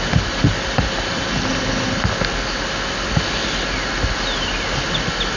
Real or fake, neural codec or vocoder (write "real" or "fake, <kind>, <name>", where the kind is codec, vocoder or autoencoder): real